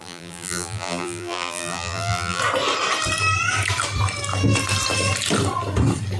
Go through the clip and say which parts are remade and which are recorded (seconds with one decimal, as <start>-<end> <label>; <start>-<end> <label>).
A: 0.0-2.4 remade; 2.4-6.2 recorded